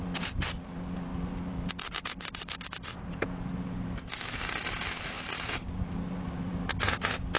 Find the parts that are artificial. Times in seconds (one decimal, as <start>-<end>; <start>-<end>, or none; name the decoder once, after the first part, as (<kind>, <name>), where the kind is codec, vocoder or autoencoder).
none

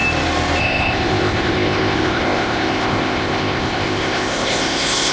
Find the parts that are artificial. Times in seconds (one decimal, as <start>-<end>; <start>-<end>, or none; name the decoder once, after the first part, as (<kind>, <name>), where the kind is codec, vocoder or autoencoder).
0.6-5.1 (codec, ZipCodec)

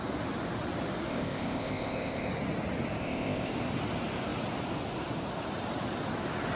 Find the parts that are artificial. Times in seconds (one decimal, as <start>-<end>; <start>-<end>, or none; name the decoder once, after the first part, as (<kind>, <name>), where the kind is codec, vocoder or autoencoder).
1.1-2.3 (codec, ZipCodec); 3.0-3.5

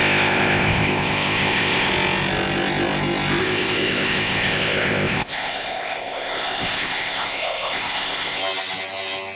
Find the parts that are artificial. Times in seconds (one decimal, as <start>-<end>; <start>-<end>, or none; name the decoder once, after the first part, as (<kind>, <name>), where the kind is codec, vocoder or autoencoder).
0.0-1.9 (codec, ZipCodec); 3.4-8.4

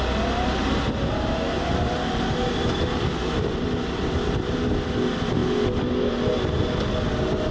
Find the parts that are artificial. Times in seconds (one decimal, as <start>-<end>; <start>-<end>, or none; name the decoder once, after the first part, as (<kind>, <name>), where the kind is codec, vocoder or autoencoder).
none

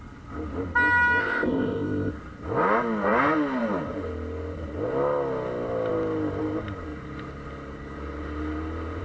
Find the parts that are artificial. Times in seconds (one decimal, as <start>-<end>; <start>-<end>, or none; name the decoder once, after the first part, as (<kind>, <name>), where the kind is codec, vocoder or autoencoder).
1.2-2.1 (codec, ZipCodec)

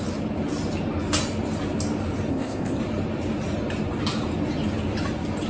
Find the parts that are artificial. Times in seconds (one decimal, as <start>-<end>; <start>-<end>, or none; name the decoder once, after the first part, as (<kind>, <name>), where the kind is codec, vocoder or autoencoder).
2.3-2.8 (codec, ZipCodec)

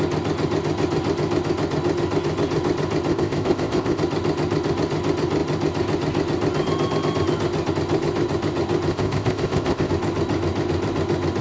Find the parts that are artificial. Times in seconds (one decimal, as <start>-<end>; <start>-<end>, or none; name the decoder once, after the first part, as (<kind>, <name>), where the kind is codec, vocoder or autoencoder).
3.1-4.0 (codec, ZipCodec); 8.9-9.9